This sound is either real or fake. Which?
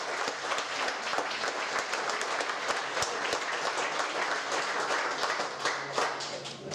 real